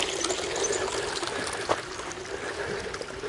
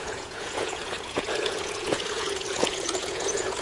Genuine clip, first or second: first